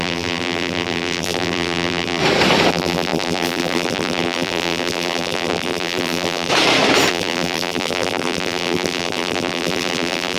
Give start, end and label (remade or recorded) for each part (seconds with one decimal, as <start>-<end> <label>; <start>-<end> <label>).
0.0-2.2 remade; 2.2-2.7 recorded; 2.7-6.5 remade; 6.5-7.1 recorded; 7.1-10.4 remade